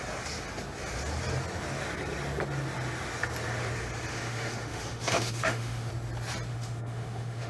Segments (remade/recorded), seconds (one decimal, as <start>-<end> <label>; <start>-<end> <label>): 0.0-4.1 recorded; 4.1-5.9 remade; 5.9-6.5 recorded; 6.5-7.5 remade